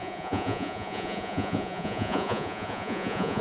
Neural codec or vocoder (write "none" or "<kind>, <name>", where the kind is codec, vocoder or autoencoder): vocoder, Vocos